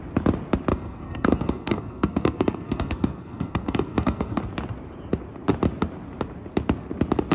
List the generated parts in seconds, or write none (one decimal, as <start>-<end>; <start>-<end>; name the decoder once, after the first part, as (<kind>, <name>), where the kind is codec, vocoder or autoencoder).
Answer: 0.7-4.4 (codec, SNAC)